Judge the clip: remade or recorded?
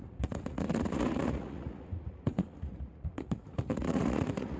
remade